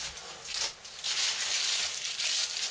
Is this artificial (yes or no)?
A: no